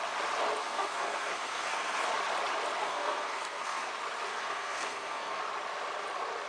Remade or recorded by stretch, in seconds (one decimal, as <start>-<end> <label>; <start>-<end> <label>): 0.0-0.6 recorded; 0.6-2.0 remade; 2.0-2.8 recorded; 2.8-3.9 remade; 3.9-4.3 recorded; 4.3-5.4 remade; 5.4-6.5 recorded

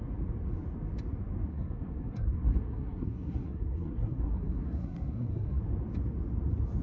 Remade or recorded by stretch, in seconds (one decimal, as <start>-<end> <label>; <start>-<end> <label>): 0.0-1.5 recorded; 1.5-5.6 remade; 5.6-6.8 recorded

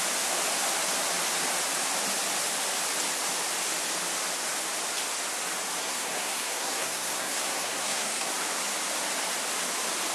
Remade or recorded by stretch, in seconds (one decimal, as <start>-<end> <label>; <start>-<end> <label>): 0.0-5.8 recorded; 5.8-8.3 remade; 8.3-10.1 recorded

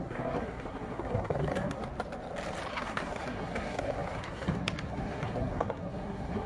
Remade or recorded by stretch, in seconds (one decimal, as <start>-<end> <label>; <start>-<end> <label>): 0.0-1.8 remade; 1.8-2.7 recorded; 2.7-6.5 remade

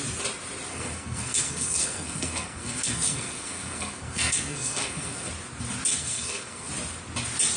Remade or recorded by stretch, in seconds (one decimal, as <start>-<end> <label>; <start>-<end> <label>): 0.0-0.7 recorded; 0.7-5.3 remade; 5.3-5.9 recorded; 5.9-6.7 remade; 6.7-7.6 recorded

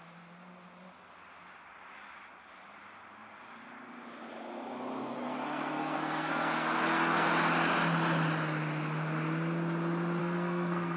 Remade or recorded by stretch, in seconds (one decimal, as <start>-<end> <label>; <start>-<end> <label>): 0.0-5.0 recorded; 5.0-7.3 remade; 7.3-10.2 recorded; 10.2-11.0 remade